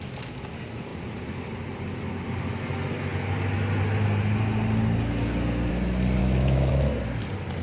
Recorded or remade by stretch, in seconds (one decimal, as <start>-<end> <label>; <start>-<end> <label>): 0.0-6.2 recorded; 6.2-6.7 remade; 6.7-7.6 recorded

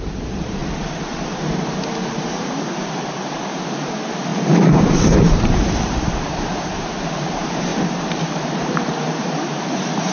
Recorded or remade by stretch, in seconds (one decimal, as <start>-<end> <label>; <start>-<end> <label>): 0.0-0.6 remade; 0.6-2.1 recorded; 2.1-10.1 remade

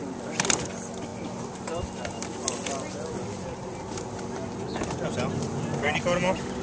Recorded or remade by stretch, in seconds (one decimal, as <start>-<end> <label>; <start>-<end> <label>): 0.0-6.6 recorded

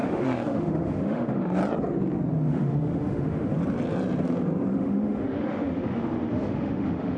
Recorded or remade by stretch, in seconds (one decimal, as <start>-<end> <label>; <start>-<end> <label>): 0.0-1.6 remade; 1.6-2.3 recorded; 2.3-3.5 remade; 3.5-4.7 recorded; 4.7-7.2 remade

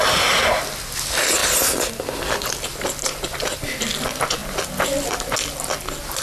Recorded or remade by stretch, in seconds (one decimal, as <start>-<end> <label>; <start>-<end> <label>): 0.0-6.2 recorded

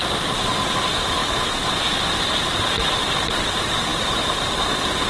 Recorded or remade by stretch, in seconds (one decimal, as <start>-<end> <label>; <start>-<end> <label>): 0.0-5.1 recorded